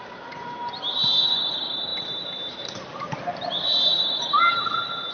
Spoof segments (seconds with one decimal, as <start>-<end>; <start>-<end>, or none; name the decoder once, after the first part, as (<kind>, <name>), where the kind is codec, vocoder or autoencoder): none